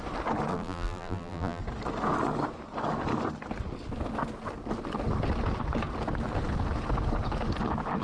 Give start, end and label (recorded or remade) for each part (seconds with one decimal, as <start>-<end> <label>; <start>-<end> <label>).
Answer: 0.0-0.5 recorded; 0.5-1.6 remade; 1.6-8.0 recorded